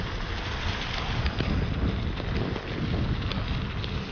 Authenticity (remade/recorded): recorded